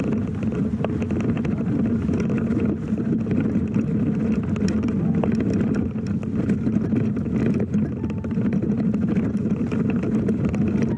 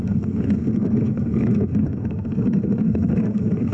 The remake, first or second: second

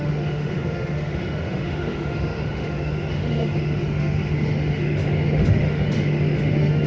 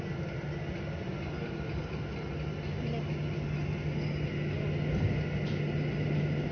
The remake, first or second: first